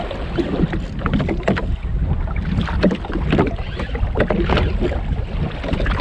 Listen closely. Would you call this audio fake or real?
real